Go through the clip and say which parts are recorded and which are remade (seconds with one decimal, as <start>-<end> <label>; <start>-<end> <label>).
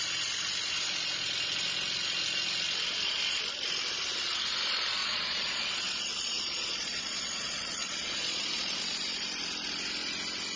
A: 0.0-5.0 recorded; 5.0-8.8 remade; 8.8-10.6 recorded